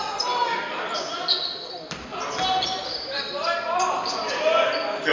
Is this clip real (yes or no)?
yes